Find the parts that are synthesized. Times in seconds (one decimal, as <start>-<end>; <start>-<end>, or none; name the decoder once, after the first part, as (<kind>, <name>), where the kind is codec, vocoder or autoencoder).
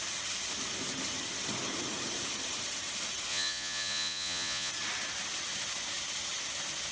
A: 3.3-4.7 (vocoder, Vocos)